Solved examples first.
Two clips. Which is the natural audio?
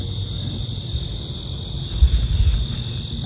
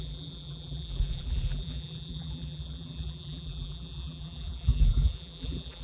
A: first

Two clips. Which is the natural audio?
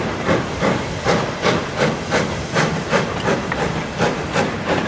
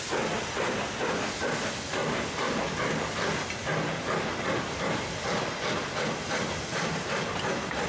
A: second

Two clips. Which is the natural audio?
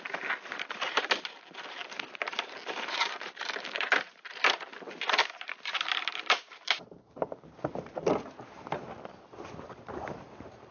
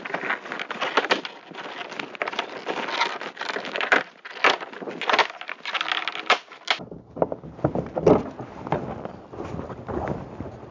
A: second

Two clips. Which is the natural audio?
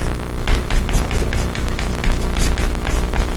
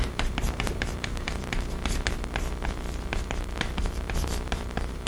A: first